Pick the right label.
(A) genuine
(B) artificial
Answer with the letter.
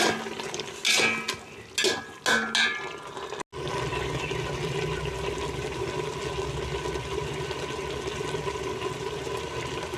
A